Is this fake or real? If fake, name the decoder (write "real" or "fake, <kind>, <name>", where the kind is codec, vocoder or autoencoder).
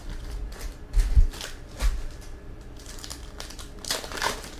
real